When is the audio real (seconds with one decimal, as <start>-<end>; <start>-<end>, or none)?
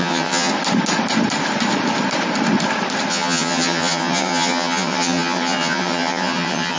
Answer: 0.5-3.1